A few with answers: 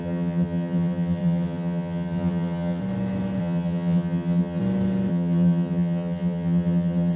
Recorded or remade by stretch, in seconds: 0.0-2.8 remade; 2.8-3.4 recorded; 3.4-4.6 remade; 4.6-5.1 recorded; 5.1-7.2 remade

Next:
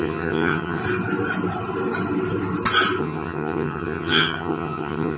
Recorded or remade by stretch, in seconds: 0.0-0.8 remade; 0.8-3.0 recorded; 3.0-5.2 remade

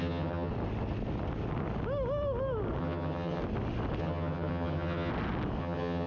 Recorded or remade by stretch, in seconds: 0.0-0.5 remade; 0.5-2.8 recorded; 2.8-3.4 remade; 3.4-4.0 recorded; 4.0-5.1 remade; 5.1-5.6 recorded; 5.6-6.1 remade